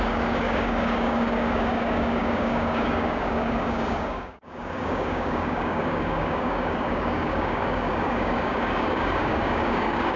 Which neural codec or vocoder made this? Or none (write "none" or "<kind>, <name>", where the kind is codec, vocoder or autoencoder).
codec, DAC